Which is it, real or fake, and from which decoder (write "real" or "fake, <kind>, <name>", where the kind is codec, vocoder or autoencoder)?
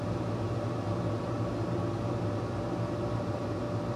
real